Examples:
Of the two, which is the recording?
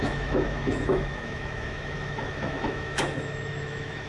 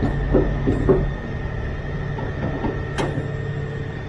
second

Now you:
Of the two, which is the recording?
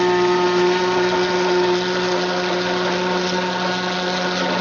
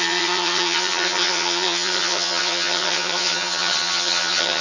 first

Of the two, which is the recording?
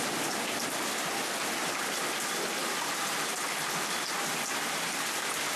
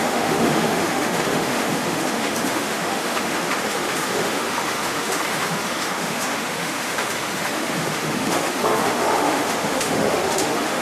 first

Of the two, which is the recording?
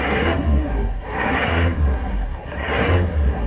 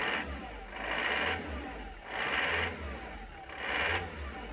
second